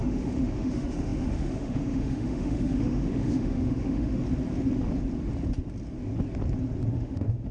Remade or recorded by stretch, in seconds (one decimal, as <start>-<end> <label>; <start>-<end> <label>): 0.0-4.2 remade; 4.2-6.9 recorded; 6.9-7.5 remade